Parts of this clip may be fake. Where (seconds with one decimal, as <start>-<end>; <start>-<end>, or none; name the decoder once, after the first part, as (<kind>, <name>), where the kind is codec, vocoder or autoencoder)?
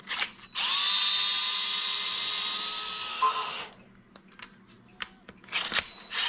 3.1-3.7 (autoencoder, DAC-VAE)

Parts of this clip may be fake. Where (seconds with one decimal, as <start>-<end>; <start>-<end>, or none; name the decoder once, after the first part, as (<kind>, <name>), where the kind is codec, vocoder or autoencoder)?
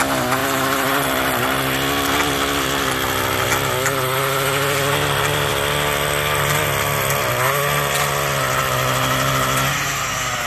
none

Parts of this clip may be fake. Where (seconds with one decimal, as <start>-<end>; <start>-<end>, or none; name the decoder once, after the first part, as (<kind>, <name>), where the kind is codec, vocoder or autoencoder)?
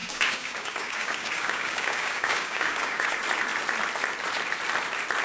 0.0-3.1 (codec, DAC)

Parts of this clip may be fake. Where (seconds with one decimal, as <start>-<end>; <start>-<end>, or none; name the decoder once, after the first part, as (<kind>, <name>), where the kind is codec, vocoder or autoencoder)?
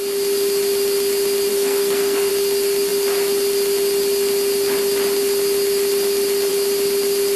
1.5-2.3 (codec, SNAC)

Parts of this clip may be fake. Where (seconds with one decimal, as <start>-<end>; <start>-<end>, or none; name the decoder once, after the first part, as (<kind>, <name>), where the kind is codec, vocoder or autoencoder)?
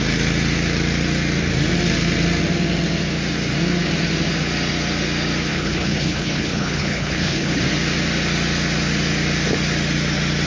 5.5-7.6 (codec, HILCodec)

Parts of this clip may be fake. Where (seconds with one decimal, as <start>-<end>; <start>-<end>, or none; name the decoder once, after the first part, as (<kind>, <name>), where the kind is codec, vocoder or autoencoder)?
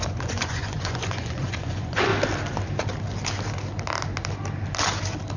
0.0-2.1 (vocoder, Vocos)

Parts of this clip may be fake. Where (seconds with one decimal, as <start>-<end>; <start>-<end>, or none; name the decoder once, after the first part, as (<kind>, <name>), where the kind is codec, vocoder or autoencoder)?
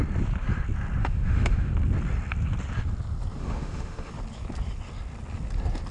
1.0-1.7 (autoencoder, DAC-VAE); 3.4-4.1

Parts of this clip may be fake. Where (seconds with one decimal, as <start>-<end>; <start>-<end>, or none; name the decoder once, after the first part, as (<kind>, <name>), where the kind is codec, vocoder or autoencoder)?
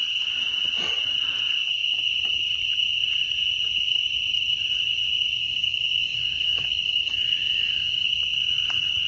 5.4-8.1 (codec, DAC)